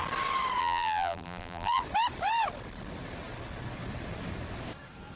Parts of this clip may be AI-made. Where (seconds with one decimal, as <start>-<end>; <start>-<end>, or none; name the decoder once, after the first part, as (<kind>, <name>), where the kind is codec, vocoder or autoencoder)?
0.6-1.8 (vocoder, BigVGAN v2)